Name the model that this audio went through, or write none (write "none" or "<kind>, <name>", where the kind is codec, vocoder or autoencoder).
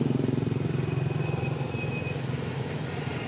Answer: none